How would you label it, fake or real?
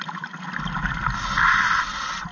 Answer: real